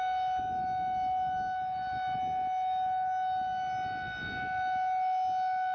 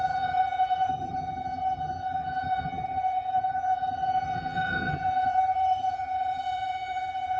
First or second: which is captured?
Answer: first